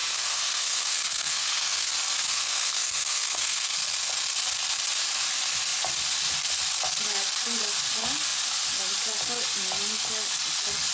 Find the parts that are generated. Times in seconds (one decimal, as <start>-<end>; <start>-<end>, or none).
0.0-1.9; 2.3-3.7